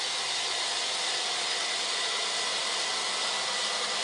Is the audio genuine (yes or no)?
yes